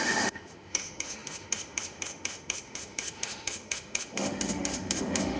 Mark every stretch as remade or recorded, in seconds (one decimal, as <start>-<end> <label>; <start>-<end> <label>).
0.0-5.4 remade